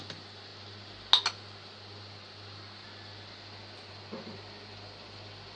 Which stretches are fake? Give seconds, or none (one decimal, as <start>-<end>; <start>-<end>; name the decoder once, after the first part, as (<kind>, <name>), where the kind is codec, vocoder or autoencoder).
none